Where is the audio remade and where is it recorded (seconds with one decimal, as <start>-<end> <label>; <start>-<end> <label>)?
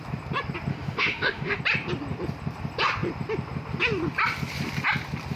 0.0-0.7 recorded; 0.7-1.6 remade; 1.6-5.4 recorded